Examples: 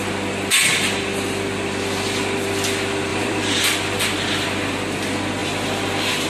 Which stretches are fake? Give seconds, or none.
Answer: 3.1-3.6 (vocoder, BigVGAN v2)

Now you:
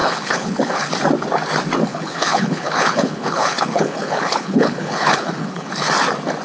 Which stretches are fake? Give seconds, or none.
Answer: 0.0-0.9 (codec, HILCodec); 1.9-5.7

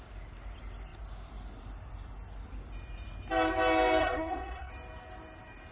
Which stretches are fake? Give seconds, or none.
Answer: 4.0-4.7 (codec, SNAC)

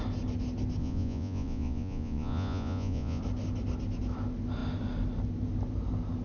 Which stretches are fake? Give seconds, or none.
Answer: 0.8-3.2 (vocoder, Vocos)

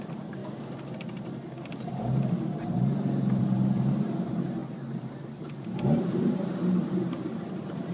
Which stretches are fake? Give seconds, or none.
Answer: 0.0-0.4 (vocoder, BigVGAN v2); 3.4-4.6; 5.4-7.9

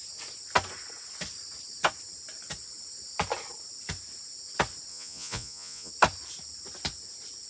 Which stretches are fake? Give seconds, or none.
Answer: 4.9-5.9 (vocoder, Vocos)